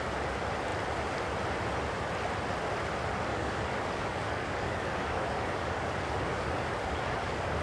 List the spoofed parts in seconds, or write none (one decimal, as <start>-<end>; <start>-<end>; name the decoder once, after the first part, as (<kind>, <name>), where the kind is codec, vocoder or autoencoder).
3.3-7.6 (codec, DAC)